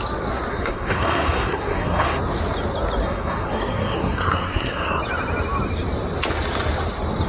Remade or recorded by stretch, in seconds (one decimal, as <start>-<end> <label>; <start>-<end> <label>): 0.0-0.5 recorded; 0.5-2.2 remade; 2.2-3.0 recorded; 3.0-5.0 remade; 5.0-7.3 recorded